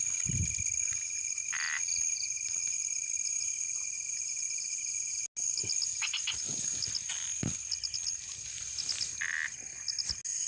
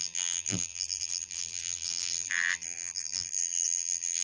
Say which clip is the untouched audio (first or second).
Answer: first